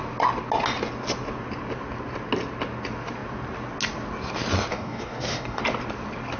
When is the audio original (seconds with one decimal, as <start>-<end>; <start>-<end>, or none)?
0.0-4.7; 5.6-6.4